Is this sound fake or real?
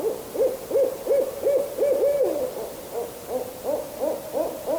real